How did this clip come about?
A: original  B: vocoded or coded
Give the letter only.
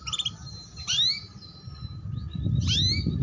A